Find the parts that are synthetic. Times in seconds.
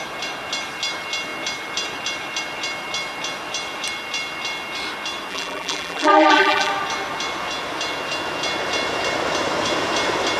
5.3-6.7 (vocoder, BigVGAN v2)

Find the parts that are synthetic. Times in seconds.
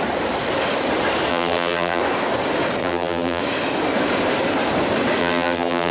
1.3-2.0 (vocoder, BigVGAN v2); 2.8-3.4; 5.2-5.9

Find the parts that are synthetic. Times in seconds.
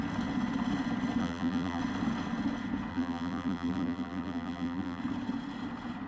1.2-1.8 (vocoder, BigVGAN v2); 2.9-5.0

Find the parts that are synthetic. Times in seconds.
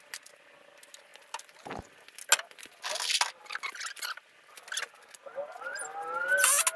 none